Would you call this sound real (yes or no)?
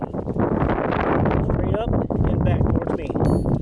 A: yes